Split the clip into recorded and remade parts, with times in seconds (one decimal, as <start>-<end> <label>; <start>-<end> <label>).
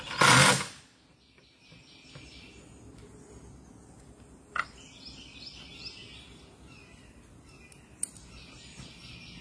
0.0-9.4 recorded